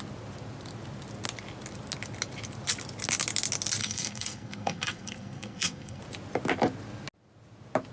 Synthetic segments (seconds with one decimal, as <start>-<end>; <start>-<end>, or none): 3.8-6.0